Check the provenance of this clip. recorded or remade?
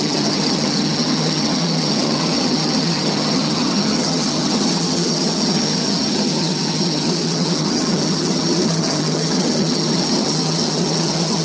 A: remade